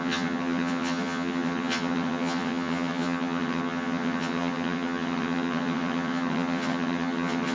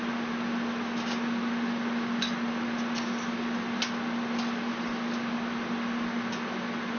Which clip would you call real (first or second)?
second